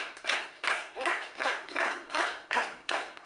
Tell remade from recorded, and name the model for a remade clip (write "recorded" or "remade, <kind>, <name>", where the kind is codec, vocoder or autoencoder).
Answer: remade, codec, SNAC